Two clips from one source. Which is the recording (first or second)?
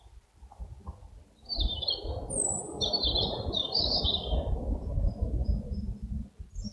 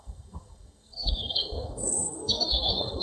first